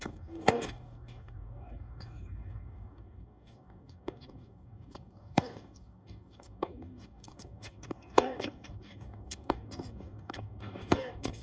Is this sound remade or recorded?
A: remade